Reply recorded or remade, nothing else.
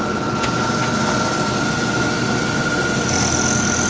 recorded